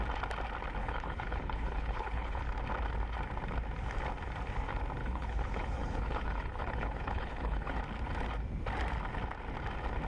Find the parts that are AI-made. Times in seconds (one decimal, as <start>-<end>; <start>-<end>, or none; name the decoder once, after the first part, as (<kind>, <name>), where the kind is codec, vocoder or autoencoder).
0.8-2.4 (codec, HILCodec); 5.0-7.8